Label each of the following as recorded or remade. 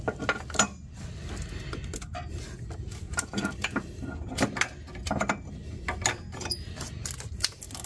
recorded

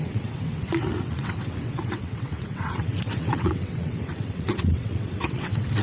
remade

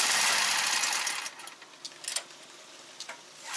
recorded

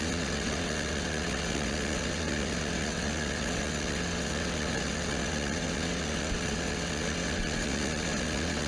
remade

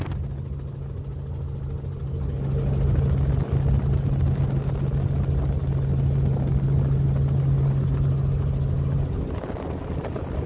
recorded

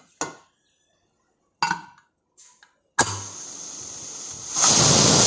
recorded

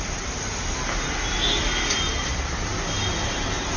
recorded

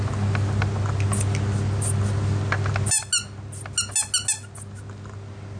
recorded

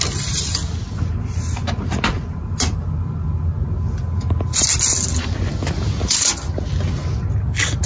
recorded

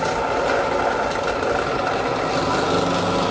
recorded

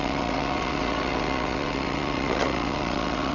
remade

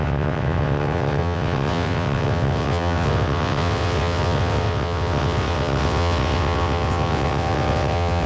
remade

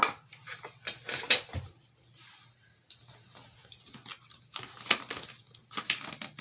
recorded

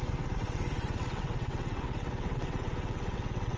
remade